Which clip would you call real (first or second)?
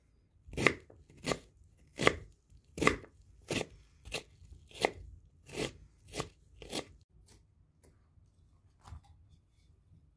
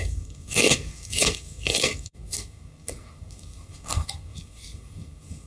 first